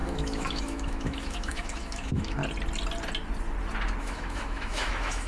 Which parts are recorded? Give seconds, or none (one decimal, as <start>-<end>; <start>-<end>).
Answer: 2.4-4.0